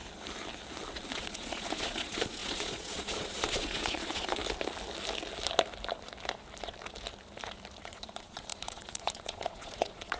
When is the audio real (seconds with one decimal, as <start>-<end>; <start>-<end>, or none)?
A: 0.0-1.1; 4.4-7.8